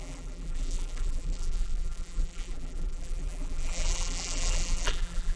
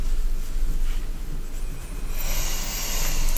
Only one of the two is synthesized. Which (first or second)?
first